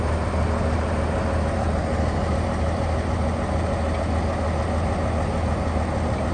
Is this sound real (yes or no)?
yes